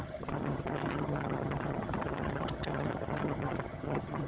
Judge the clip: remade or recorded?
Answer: remade